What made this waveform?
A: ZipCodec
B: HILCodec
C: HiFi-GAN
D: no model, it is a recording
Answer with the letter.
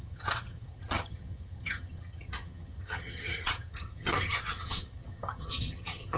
C